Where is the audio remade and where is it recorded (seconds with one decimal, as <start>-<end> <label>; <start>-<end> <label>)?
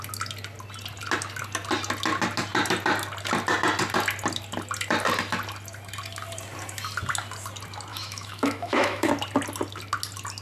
0.0-7.9 recorded; 7.9-9.1 remade; 9.1-10.4 recorded